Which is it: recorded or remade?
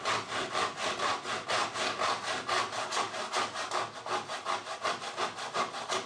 recorded